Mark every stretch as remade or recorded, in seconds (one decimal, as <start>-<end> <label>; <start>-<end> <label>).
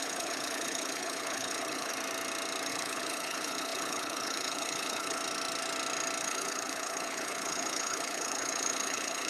0.0-1.9 remade; 1.9-2.7 recorded; 2.7-5.2 remade; 5.2-6.2 recorded; 6.2-9.3 remade